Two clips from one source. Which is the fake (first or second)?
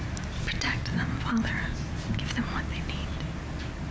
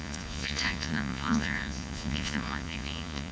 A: second